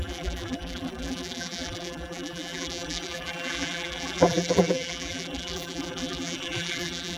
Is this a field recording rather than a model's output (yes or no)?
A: no